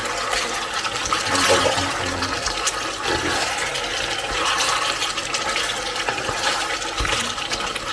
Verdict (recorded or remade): recorded